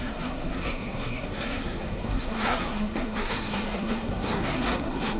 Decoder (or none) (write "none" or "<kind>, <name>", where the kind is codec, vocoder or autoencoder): codec, SNAC